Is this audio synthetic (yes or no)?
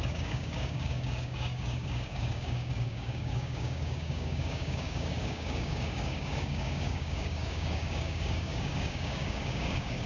yes